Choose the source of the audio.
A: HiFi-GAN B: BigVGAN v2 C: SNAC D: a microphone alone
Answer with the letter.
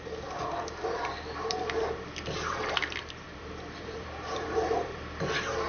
B